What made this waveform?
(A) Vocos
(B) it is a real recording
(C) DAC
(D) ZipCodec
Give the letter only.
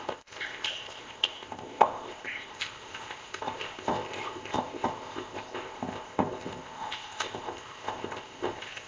D